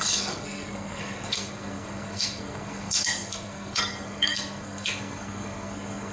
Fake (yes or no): yes